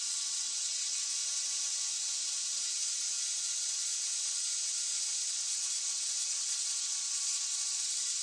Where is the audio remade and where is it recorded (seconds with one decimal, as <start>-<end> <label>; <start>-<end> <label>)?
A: 0.0-1.1 remade; 1.1-5.3 recorded; 5.3-8.2 remade